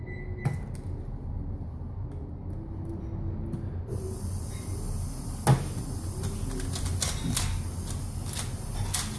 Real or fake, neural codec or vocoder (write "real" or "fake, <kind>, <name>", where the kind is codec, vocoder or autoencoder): real